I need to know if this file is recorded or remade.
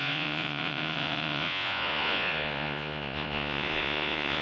remade